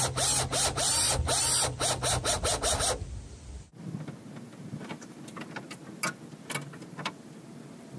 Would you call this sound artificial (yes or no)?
no